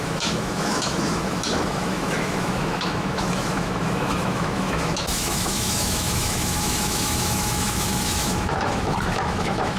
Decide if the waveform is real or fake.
fake